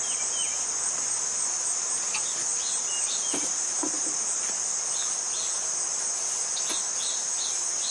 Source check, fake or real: real